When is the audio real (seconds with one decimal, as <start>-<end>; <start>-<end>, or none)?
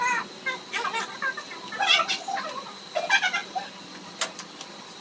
0.0-5.0